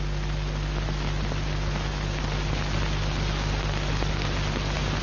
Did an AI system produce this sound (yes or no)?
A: no